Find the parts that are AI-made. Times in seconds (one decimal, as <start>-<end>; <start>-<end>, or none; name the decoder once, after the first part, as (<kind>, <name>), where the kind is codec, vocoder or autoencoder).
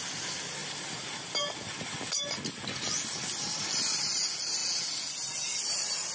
none